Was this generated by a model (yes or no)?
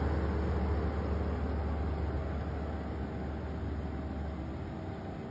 no